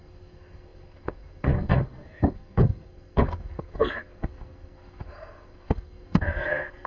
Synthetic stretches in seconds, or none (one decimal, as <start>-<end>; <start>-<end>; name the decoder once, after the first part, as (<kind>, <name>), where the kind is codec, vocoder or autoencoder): 0.0-6.9 (codec, SNAC)